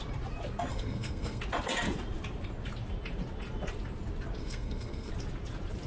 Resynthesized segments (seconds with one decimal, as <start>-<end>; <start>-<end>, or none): 0.7-1.4; 4.4-5.1